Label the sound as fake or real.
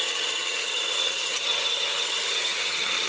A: fake